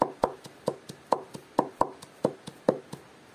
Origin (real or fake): real